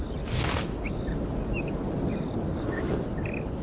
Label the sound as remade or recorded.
recorded